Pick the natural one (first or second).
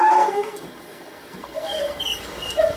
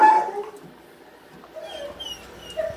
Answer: second